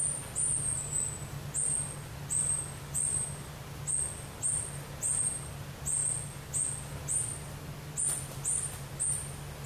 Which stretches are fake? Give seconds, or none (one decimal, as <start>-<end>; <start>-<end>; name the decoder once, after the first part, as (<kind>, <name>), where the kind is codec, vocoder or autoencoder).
none